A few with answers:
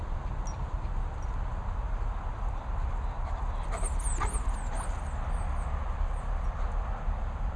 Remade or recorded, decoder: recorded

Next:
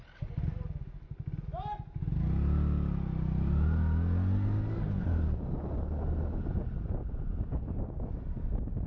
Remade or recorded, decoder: recorded